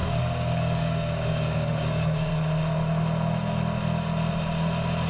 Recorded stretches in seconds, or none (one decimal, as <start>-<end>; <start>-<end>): 2.3-5.1